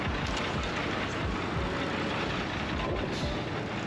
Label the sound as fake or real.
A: real